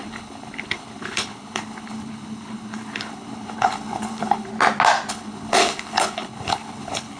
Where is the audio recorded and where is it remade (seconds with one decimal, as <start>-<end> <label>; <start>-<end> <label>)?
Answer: 0.0-4.5 remade; 4.5-5.1 recorded; 5.1-7.2 remade